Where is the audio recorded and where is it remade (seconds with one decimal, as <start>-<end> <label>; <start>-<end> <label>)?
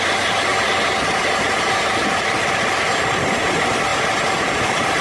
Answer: 0.0-0.5 remade; 0.5-3.5 recorded; 3.5-3.9 remade; 3.9-4.6 recorded; 4.6-5.0 remade